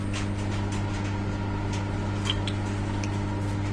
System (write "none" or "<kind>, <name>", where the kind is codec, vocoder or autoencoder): none